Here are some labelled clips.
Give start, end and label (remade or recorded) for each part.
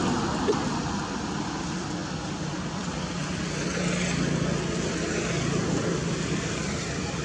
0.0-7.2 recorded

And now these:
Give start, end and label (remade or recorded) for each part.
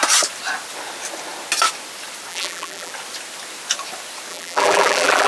0.0-2.3 recorded; 2.3-2.9 remade; 2.9-4.3 recorded; 4.3-5.3 remade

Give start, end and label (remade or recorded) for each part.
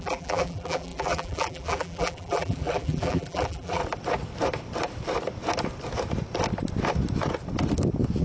0.0-3.8 remade; 3.8-8.2 recorded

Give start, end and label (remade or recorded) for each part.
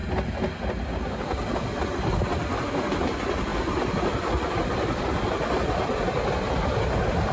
0.0-7.3 recorded